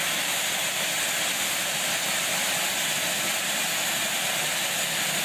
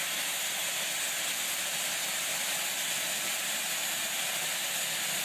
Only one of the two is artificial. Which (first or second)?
first